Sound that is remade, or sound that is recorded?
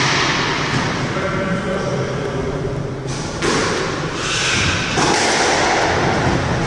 recorded